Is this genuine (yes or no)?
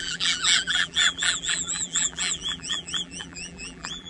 no